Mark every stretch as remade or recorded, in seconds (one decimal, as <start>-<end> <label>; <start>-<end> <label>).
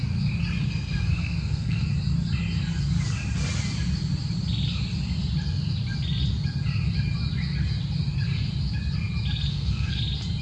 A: 0.0-0.6 recorded; 0.6-1.9 remade; 1.9-9.5 recorded; 9.5-10.0 remade; 10.0-10.4 recorded